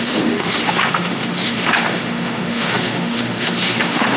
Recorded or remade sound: remade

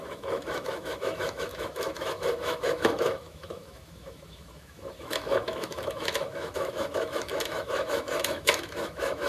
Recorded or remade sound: remade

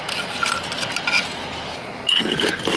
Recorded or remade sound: recorded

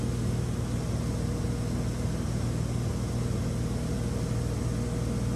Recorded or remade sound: recorded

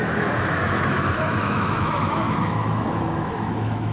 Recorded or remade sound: remade